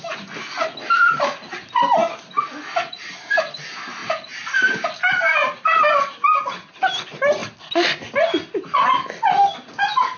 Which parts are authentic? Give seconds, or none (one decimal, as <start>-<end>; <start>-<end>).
0.0-4.0; 6.8-10.2

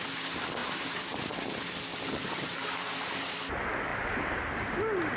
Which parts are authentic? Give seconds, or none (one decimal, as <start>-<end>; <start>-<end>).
0.0-0.6; 1.2-1.9; 3.1-3.9; 4.7-5.2

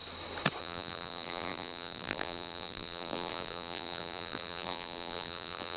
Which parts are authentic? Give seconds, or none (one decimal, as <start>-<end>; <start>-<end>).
0.0-0.6

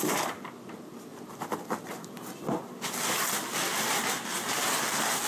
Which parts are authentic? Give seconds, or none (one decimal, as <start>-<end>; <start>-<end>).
0.0-3.7; 4.8-5.3

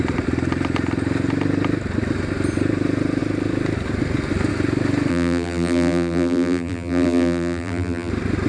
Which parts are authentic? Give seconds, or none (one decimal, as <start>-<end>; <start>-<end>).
0.0-5.1; 8.1-8.5

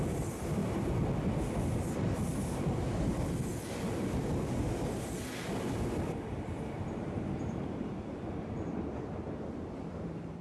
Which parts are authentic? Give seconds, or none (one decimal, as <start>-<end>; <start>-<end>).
0.6-2.4; 3.1-6.5

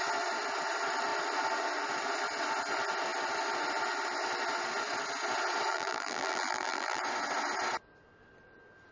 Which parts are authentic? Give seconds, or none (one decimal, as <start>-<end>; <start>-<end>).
0.0-5.7; 7.0-8.9